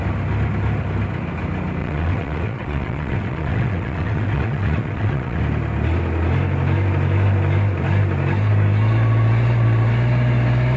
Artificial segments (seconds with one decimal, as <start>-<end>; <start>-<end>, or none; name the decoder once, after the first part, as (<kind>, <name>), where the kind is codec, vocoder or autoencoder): 1.8-5.4 (vocoder, WaveNeXt)